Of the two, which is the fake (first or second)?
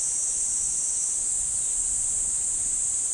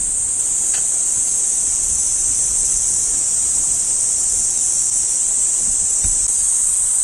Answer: first